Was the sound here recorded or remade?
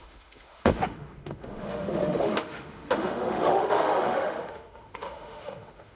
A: remade